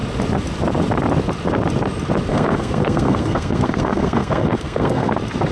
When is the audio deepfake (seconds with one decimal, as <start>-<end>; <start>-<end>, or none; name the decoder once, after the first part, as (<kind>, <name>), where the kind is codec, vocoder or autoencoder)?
2.3-5.1 (codec, SNAC)